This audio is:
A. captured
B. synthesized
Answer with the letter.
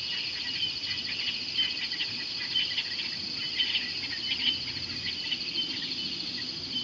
A